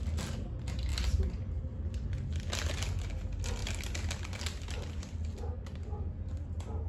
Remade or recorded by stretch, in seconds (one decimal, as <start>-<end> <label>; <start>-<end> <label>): 0.0-6.9 recorded